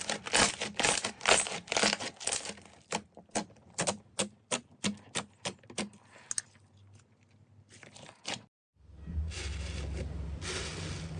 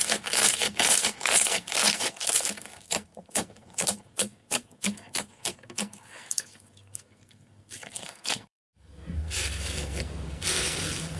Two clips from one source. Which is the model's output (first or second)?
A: second